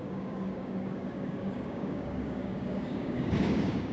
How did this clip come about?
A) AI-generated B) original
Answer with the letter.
A